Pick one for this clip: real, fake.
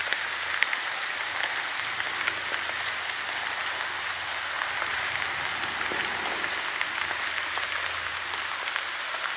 real